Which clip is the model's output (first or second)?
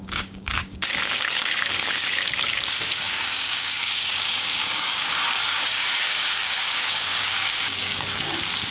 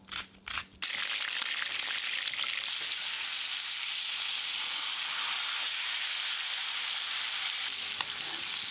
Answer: first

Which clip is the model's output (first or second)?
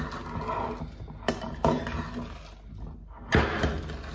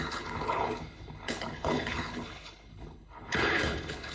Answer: second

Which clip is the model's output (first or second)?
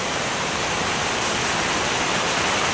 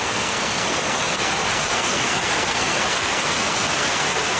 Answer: second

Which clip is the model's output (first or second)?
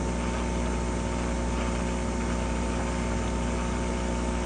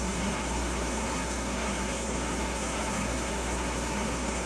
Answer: second